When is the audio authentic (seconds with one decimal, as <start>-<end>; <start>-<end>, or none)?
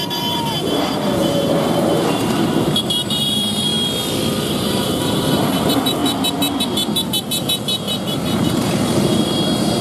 3.7-4.5; 6.0-8.1